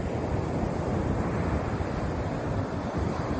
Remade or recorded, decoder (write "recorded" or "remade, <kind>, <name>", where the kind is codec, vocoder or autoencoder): recorded